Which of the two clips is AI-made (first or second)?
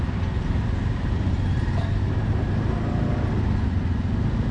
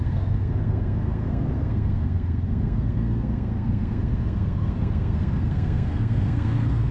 second